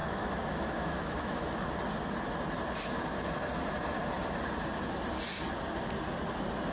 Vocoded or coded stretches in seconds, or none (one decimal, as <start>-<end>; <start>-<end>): 0.0-1.5

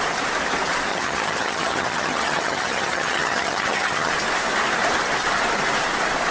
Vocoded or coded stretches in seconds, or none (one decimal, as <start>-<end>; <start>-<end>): 0.9-4.1

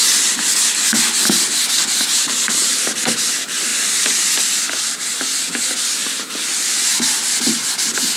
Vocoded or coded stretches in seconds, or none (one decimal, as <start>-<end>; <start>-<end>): none

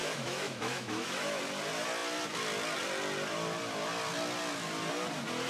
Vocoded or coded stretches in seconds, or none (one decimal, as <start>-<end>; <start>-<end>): 0.0-1.4

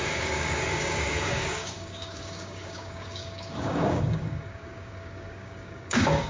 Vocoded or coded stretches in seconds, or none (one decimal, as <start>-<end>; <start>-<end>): 0.0-6.3

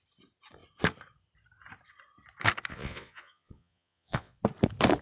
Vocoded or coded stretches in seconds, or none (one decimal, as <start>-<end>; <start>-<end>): 2.7-4.4

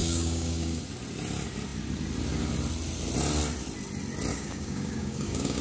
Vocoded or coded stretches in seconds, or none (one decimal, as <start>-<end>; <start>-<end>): 0.0-0.8; 4.3-5.6

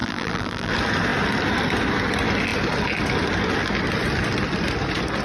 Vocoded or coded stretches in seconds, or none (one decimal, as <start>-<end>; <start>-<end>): 0.0-0.7